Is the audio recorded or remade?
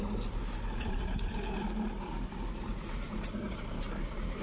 recorded